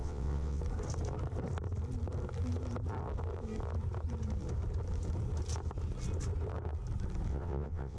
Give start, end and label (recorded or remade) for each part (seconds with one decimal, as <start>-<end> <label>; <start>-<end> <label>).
0.0-0.6 remade; 0.6-7.3 recorded; 7.3-8.0 remade